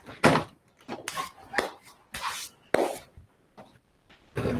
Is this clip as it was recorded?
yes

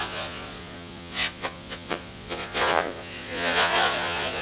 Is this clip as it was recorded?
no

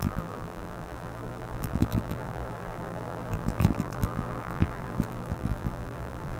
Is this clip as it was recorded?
no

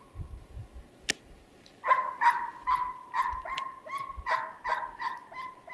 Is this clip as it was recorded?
yes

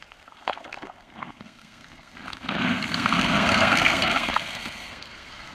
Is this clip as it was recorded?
no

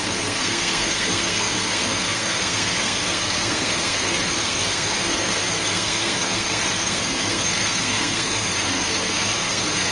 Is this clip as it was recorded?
no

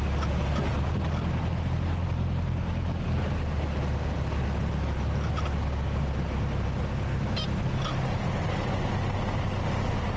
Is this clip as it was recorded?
yes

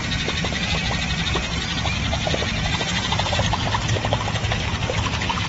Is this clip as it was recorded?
yes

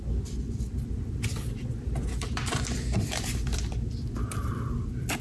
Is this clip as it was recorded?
no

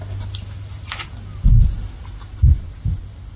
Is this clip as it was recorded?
yes